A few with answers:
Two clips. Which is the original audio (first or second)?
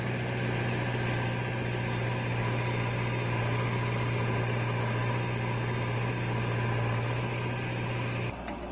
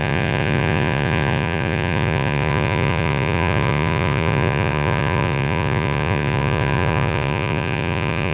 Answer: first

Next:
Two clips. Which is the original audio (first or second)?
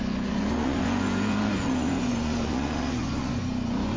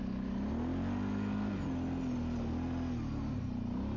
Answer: second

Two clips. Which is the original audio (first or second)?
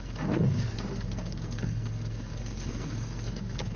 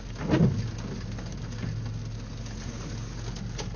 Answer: second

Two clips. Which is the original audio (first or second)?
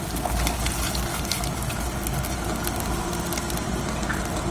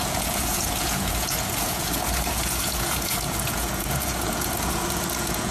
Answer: first